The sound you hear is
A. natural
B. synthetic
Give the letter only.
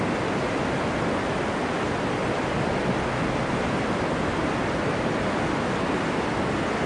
A